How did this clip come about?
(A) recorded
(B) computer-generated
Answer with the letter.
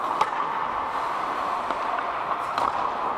A